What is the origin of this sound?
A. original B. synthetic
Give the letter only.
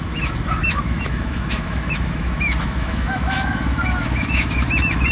B